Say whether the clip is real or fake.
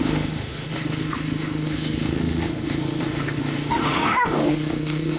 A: fake